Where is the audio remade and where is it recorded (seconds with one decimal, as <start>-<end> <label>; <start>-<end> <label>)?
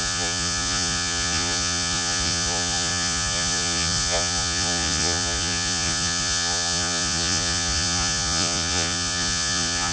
0.0-9.9 remade